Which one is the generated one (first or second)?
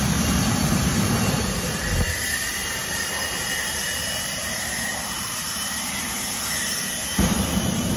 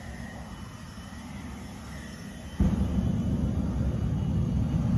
first